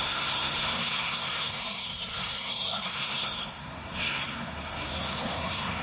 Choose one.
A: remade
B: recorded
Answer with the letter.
A